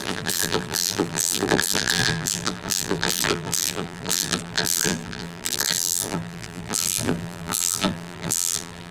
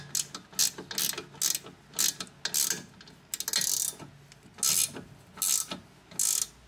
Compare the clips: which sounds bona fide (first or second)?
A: second